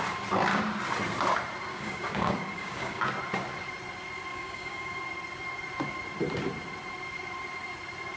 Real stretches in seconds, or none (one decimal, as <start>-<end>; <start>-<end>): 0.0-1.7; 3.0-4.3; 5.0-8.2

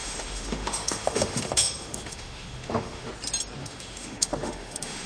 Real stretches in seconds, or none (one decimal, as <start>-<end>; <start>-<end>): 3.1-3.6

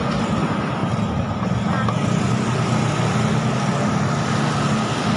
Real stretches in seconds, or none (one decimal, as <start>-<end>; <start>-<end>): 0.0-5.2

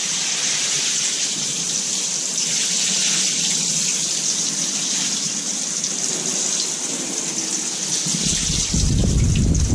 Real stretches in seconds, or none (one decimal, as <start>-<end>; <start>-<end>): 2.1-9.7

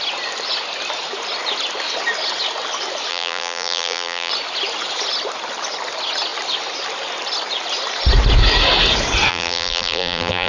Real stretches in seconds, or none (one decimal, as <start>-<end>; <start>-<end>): 0.0-3.1; 4.3-9.3

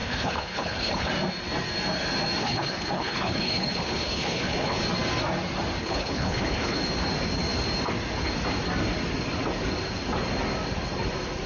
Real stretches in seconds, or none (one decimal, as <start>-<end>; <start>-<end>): 1.1-2.4; 4.8-5.8; 6.8-11.5

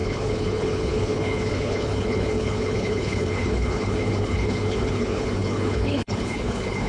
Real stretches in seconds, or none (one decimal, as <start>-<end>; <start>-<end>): none

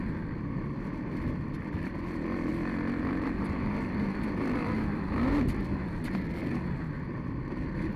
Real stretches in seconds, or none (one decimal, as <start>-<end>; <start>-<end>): 0.0-2.5; 5.1-8.0